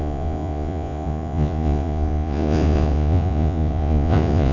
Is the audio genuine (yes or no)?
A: no